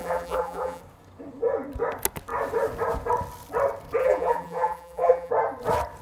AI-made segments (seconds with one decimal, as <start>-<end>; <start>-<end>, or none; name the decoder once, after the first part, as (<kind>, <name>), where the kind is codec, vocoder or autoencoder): 0.0-0.8 (vocoder, BigVGAN v2); 4.0-5.3